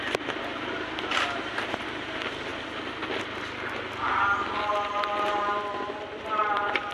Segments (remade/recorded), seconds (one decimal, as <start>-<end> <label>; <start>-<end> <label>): 0.0-2.5 remade; 2.5-4.7 recorded; 4.7-6.9 remade